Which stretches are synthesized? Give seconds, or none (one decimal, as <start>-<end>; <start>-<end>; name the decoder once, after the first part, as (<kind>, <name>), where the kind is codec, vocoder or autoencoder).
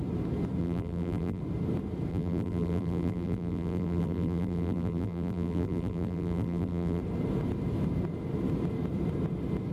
0.6-1.4 (vocoder, BigVGAN v2); 2.1-7.0